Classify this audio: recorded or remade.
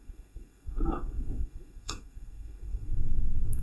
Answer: remade